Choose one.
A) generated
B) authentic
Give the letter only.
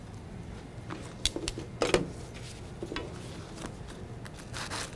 B